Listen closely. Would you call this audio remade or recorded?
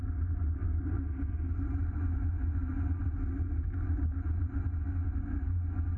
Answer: recorded